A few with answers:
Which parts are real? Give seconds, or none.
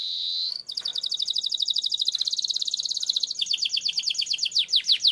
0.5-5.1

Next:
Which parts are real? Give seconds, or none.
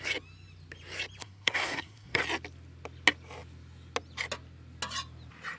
0.0-1.2; 2.2-5.6